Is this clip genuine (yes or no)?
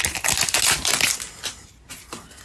yes